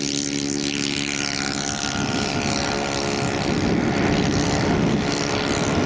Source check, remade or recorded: recorded